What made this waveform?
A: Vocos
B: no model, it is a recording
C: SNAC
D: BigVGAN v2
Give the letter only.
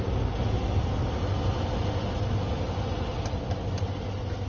B